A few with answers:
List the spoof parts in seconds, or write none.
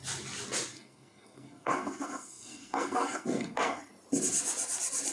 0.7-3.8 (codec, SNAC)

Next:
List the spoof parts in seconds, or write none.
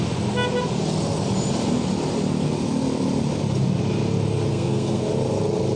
4.5-5.0 (codec, SNAC)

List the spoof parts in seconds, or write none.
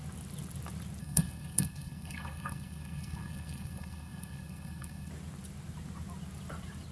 1.0-5.1 (codec, SNAC)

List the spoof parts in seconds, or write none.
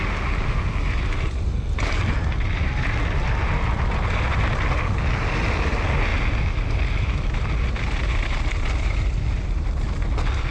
none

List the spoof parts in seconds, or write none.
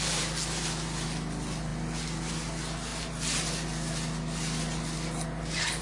none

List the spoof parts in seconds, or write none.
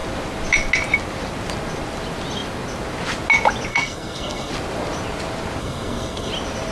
3.7-4.5 (codec, SNAC); 5.6-6.3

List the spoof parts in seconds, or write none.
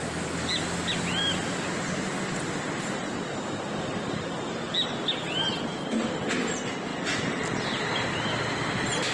none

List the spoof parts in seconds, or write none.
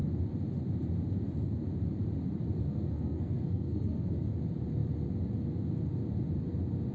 2.6-4.3 (codec, SNAC)